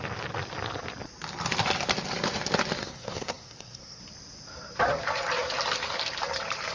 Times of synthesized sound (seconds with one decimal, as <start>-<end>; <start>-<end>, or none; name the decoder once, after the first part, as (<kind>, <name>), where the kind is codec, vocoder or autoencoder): 2.8-4.0 (codec, SNAC)

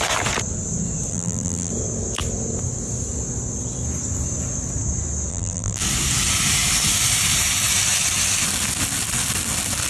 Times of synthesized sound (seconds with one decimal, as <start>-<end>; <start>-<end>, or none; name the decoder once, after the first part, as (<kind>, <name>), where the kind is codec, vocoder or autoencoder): 1.1-1.7 (vocoder, BigVGAN v2); 5.3-5.8

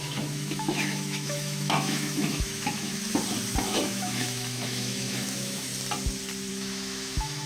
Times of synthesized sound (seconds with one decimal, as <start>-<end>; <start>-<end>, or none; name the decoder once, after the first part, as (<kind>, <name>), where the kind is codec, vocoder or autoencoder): 0.0-2.9 (autoencoder, DAC-VAE); 3.6-5.7; 6.5-7.5

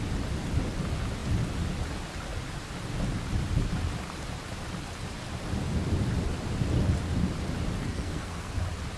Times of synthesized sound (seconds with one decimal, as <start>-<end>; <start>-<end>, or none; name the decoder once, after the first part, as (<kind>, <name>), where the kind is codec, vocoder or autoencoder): 7.8-8.5 (codec, SNAC)

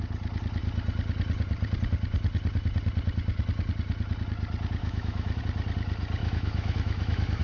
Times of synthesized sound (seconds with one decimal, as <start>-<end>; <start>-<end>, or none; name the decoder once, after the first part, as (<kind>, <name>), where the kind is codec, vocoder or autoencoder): 4.8-5.4 (autoencoder, DAC-VAE); 6.2-7.4